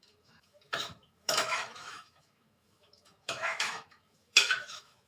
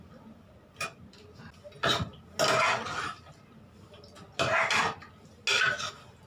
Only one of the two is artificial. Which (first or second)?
first